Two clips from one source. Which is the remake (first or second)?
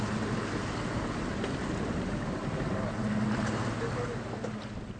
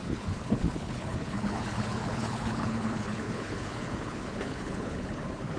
second